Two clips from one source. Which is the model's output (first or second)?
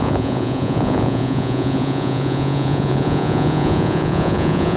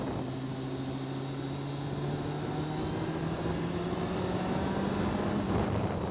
first